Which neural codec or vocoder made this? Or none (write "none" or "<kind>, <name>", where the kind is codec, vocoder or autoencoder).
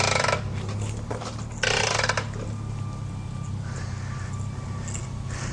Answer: none